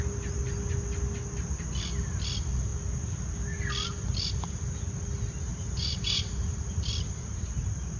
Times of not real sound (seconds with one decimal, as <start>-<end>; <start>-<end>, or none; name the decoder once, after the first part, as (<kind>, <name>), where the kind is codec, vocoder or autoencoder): 5.5-6.9 (vocoder, BigVGAN v2)